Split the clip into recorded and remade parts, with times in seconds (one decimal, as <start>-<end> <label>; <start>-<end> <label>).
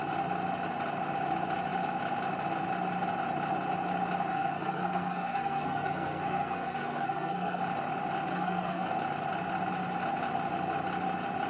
0.0-4.3 recorded; 4.3-7.6 remade; 7.6-8.3 recorded; 8.3-8.9 remade; 8.9-11.5 recorded